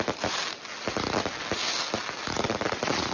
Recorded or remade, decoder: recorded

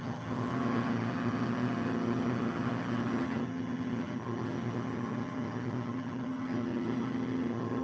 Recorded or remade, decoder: remade, vocoder, HiFi-GAN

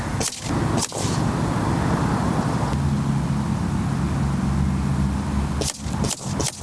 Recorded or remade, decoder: recorded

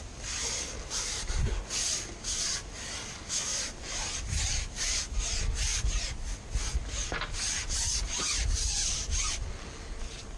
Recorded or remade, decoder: recorded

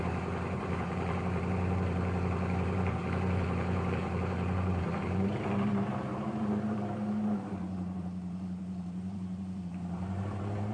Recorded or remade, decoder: remade, vocoder, BigVGAN v2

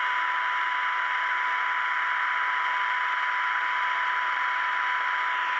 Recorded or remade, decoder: recorded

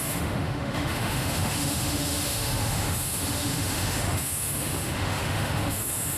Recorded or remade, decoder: remade, autoencoder, DAC-VAE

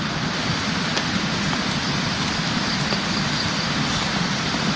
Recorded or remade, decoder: recorded